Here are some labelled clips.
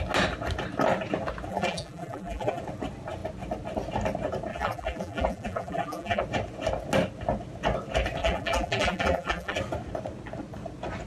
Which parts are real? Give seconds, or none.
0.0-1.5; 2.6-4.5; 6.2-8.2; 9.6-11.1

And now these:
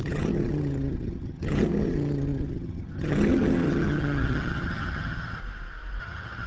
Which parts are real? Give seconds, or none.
5.4-6.0